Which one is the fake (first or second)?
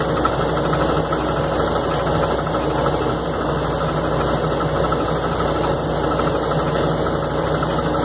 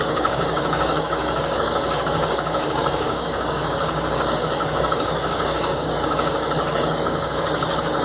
second